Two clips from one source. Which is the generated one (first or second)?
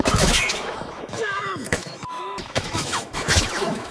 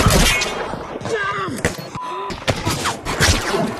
first